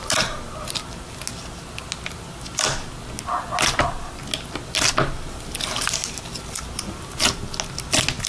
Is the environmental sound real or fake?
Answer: real